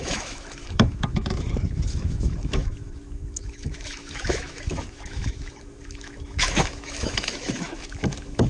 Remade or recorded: remade